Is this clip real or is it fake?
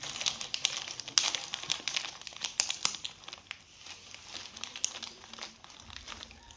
real